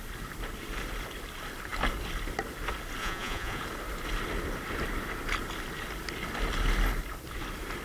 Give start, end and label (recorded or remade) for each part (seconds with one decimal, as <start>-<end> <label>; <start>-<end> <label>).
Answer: 0.0-3.0 recorded; 3.0-3.6 remade; 3.6-7.8 recorded